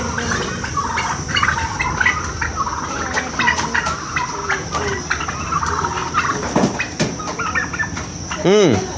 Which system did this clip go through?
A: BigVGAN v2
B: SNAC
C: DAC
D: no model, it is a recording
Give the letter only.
D